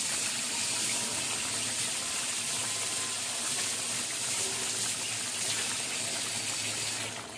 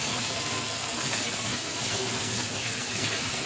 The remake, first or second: second